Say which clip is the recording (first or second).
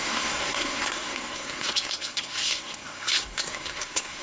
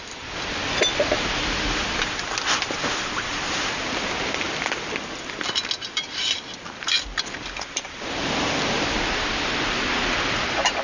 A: second